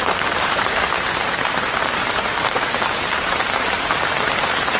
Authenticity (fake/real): fake